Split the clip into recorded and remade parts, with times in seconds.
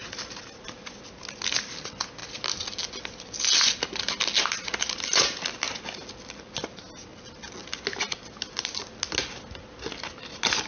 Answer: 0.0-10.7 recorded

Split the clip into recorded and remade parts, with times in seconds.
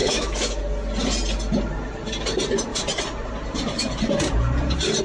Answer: 0.0-0.6 remade; 0.6-5.0 recorded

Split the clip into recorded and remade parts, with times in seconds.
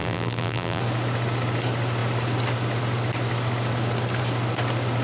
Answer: 0.0-0.8 remade; 0.8-5.0 recorded